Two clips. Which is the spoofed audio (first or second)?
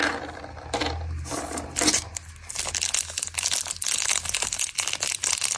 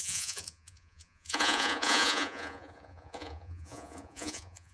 second